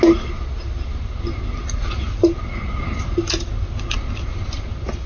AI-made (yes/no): no